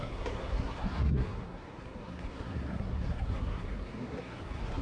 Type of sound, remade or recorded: remade